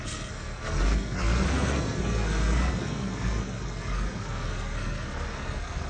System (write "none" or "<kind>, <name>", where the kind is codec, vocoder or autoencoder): codec, SNAC